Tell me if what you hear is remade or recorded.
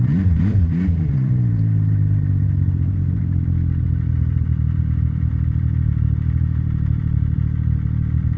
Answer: remade